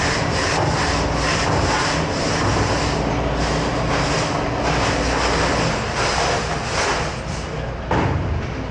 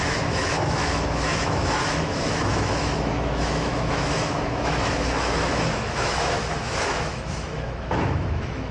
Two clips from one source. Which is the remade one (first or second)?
second